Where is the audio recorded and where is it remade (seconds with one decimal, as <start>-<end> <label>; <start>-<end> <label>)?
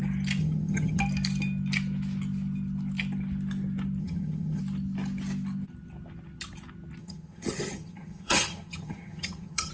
0.0-0.4 recorded; 0.4-1.0 remade; 1.0-4.0 recorded; 4.0-4.6 remade; 4.6-7.0 recorded; 7.0-9.7 remade